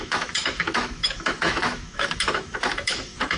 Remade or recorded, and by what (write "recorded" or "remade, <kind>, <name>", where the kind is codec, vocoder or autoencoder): remade, autoencoder, DAC-VAE